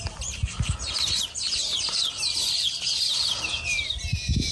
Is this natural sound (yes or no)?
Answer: yes